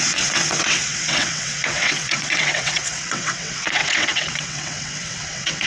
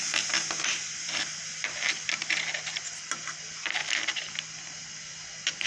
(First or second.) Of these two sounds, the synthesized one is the first